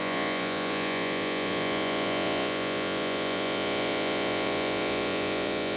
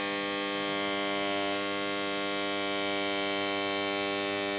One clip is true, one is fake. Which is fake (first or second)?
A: first